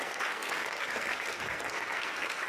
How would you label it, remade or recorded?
remade